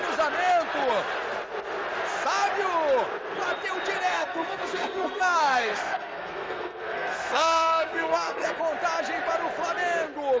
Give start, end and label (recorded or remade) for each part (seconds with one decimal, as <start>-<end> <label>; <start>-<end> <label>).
0.0-4.2 recorded; 4.2-8.6 remade; 8.6-10.4 recorded